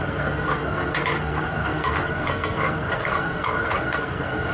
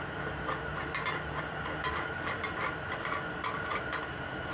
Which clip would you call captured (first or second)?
second